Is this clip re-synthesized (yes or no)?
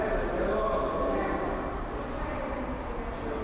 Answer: no